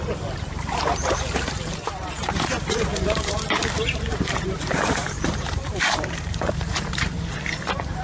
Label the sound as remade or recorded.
remade